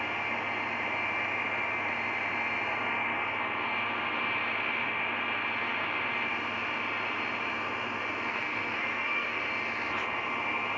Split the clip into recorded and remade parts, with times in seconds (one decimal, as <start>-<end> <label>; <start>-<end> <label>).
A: 0.0-8.3 recorded; 8.3-9.4 remade; 9.4-10.8 recorded